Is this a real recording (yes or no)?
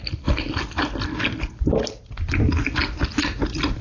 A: yes